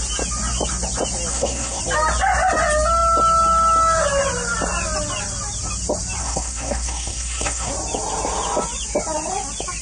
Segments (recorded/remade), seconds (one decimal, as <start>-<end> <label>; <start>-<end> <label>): 0.0-1.3 recorded; 1.3-1.8 remade; 1.8-6.2 recorded; 6.2-7.7 remade; 7.7-9.8 recorded